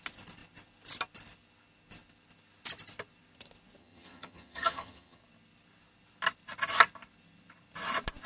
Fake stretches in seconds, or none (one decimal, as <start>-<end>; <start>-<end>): 3.8-5.2